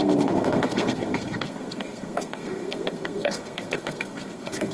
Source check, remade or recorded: remade